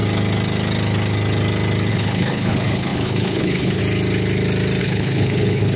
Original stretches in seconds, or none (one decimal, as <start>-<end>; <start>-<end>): 0.0-1.9; 3.8-4.8